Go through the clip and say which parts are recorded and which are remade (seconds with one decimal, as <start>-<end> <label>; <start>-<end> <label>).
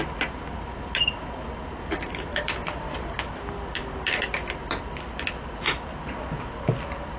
0.0-2.3 recorded; 2.3-3.9 remade; 3.9-4.6 recorded; 4.6-7.2 remade